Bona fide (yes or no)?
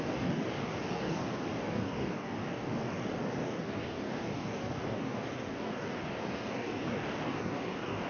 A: no